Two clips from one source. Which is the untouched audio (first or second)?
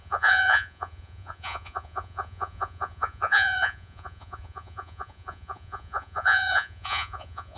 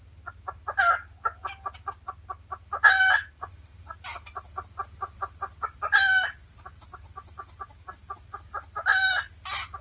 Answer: second